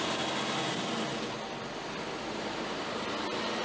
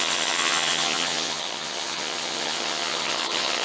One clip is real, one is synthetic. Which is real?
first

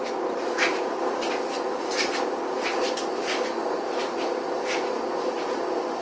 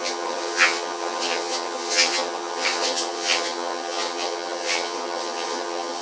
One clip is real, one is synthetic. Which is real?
first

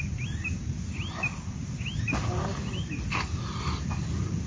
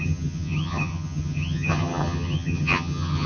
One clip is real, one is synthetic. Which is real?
first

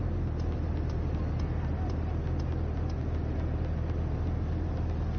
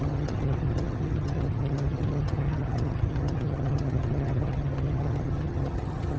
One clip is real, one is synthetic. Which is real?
first